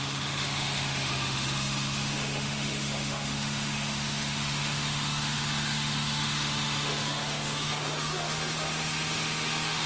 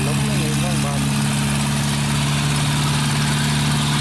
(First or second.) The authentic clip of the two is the second